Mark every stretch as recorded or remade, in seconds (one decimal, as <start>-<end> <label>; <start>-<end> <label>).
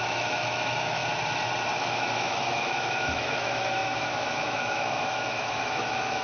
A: 0.0-1.0 remade; 1.0-1.8 recorded; 1.8-6.2 remade